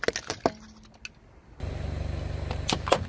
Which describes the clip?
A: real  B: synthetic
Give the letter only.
A